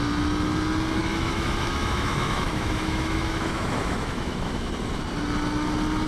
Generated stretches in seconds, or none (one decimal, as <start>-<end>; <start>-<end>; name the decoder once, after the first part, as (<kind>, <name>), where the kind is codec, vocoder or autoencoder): 1.0-4.7 (autoencoder, DAC-VAE)